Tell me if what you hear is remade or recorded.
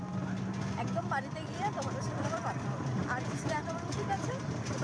recorded